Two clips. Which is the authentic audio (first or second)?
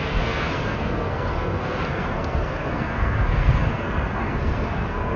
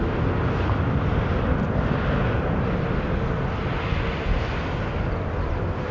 second